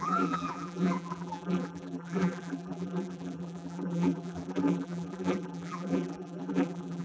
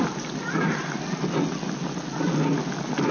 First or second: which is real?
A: second